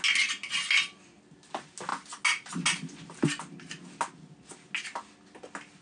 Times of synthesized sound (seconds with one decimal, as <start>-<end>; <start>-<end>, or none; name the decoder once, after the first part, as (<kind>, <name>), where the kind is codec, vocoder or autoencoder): none